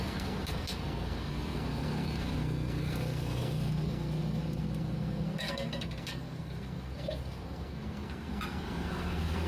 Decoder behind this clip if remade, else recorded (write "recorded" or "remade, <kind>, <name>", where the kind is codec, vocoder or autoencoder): remade, codec, SNAC